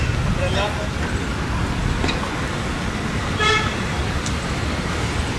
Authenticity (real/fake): real